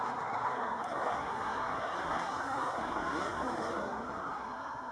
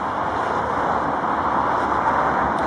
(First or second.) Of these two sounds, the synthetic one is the first